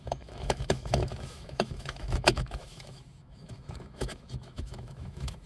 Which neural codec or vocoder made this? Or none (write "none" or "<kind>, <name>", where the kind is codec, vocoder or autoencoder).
autoencoder, DAC-VAE